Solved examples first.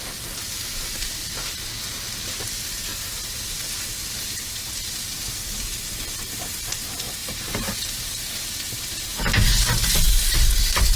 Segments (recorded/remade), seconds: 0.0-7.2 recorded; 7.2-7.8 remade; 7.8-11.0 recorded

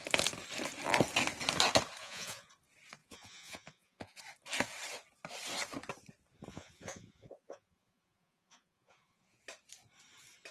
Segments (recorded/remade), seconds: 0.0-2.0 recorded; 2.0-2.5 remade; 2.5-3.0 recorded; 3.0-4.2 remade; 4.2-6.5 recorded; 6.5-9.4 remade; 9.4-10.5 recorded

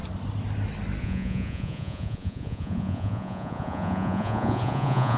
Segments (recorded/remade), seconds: 0.0-1.0 recorded; 1.0-5.2 remade

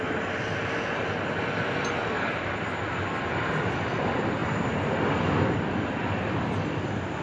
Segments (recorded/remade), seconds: 0.0-7.2 recorded

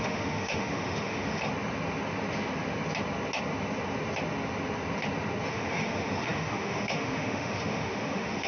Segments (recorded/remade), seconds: 0.0-1.5 remade; 1.5-5.5 recorded; 5.5-8.5 remade

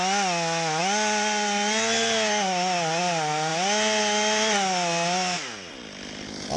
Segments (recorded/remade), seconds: 0.0-6.6 recorded